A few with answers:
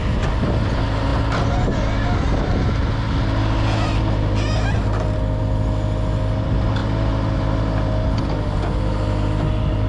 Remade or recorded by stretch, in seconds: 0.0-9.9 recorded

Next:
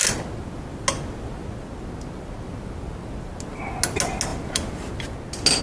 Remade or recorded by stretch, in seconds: 0.0-5.6 recorded

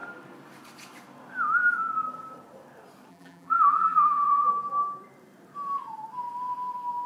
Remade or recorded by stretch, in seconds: 0.0-3.1 recorded; 3.1-4.5 remade; 4.5-7.1 recorded

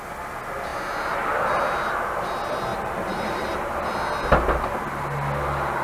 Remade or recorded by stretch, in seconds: 0.0-2.7 recorded; 2.7-3.7 remade; 3.7-5.8 recorded

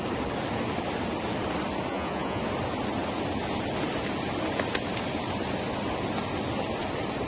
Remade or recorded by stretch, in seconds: 0.0-1.9 recorded; 1.9-2.4 remade; 2.4-7.3 recorded

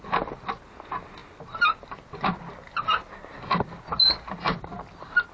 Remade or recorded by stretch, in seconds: 0.0-5.3 recorded